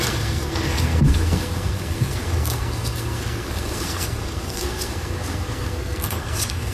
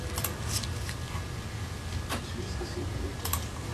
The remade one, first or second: first